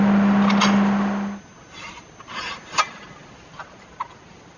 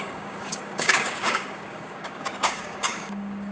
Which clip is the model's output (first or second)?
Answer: second